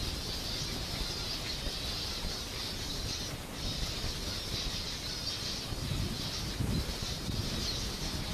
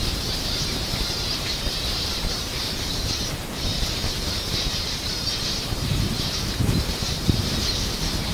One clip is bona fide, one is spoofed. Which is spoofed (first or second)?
second